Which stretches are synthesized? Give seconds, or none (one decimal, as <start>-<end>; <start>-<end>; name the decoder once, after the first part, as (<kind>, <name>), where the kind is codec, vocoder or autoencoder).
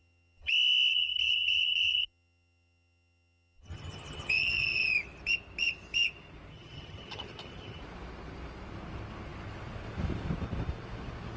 0.0-0.5 (vocoder, HiFi-GAN); 0.9-4.9; 6.5-7.8